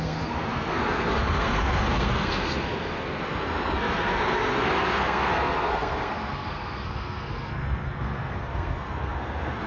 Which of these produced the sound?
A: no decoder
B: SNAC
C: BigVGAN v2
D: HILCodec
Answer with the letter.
B